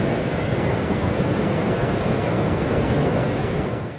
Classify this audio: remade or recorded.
remade